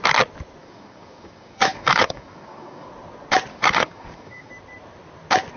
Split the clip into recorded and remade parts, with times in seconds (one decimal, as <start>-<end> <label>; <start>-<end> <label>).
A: 0.0-0.6 recorded; 0.6-2.9 remade; 2.9-3.5 recorded; 3.5-4.5 remade; 4.5-5.6 recorded